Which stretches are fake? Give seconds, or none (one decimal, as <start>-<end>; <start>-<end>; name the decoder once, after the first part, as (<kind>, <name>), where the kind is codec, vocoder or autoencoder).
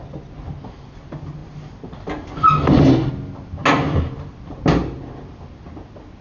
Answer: none